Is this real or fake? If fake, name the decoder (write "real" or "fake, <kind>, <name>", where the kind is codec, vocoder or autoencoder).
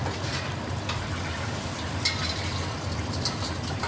real